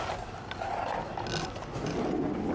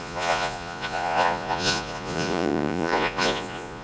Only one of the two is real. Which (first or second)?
first